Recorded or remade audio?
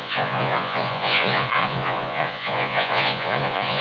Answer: remade